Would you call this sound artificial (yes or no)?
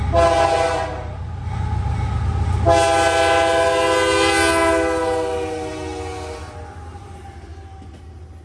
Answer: no